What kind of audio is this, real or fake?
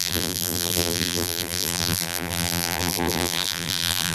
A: fake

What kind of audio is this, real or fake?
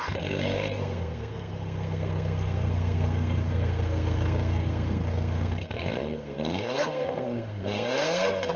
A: fake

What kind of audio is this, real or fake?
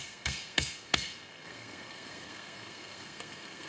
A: fake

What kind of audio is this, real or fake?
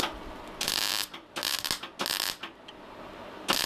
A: real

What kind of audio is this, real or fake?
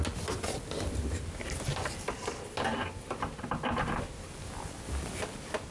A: real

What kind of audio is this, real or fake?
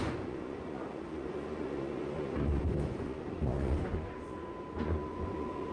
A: fake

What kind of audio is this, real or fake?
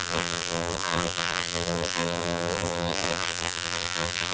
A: fake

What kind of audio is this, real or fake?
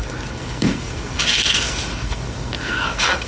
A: fake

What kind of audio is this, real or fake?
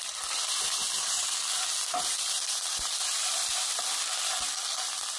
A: real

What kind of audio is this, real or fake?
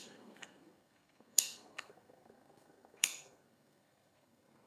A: fake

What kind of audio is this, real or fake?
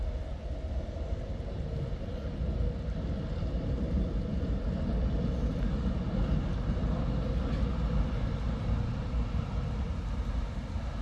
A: real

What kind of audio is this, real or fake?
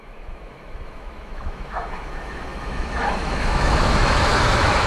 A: fake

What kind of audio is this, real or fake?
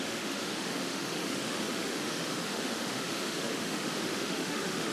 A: fake